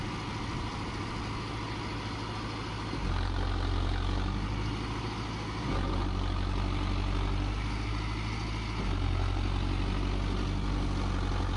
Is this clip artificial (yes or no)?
no